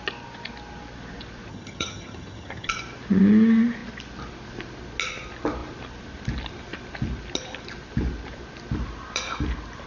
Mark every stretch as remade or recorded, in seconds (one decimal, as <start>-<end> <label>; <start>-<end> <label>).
0.0-1.5 recorded; 1.5-2.7 remade; 2.7-9.9 recorded